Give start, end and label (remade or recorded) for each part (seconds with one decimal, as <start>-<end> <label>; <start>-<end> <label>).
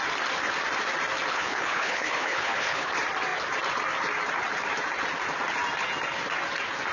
0.0-1.3 recorded; 1.3-2.9 remade; 2.9-6.9 recorded